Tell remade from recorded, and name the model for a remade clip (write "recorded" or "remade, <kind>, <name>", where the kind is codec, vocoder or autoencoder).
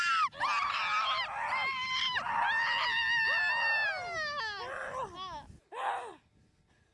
recorded